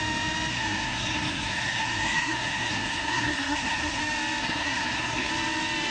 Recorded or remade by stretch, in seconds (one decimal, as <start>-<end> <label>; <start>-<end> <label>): 0.0-0.5 recorded; 0.5-4.0 remade; 4.0-4.4 recorded; 4.4-5.3 remade; 5.3-5.9 recorded